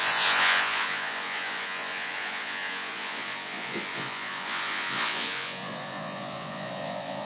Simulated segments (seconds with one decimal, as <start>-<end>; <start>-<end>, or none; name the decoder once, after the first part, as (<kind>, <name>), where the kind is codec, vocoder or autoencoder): 0.0-7.2 (vocoder, Vocos)